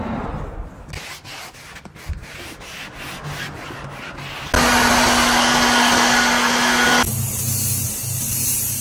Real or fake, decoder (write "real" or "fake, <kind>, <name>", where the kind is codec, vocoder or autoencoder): real